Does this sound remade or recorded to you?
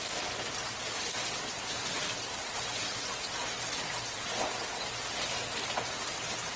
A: recorded